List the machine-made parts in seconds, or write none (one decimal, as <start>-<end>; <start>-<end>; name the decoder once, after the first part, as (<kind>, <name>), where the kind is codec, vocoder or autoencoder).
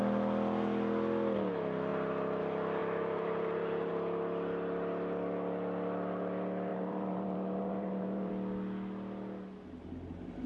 2.8-3.9 (vocoder, BigVGAN v2); 6.7-8.3